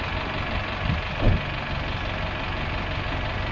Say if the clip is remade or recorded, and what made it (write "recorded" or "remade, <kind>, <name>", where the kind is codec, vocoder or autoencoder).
recorded